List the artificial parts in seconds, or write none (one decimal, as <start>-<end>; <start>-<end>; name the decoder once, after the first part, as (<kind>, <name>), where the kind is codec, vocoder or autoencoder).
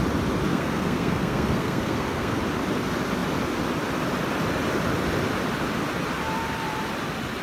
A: 0.5-2.4 (codec, SNAC)